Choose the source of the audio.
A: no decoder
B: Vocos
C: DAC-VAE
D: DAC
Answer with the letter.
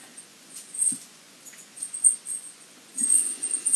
B